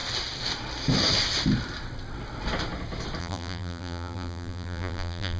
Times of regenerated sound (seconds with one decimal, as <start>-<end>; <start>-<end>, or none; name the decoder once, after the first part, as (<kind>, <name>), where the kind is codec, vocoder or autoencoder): 3.2-5.4 (vocoder, BigVGAN v2)